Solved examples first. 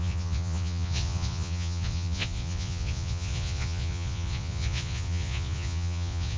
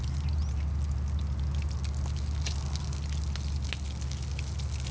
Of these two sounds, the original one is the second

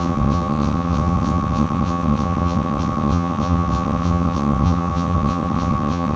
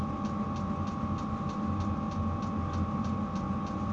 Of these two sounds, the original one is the second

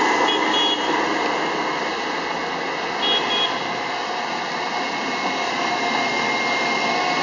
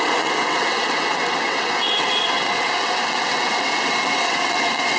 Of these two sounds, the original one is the first